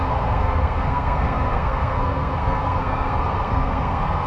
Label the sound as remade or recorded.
remade